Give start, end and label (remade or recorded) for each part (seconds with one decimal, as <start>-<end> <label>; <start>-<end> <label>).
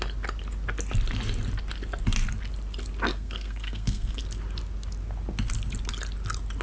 0.0-3.1 recorded; 3.1-4.2 remade; 4.2-6.6 recorded